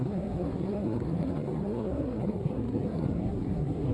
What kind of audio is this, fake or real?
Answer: fake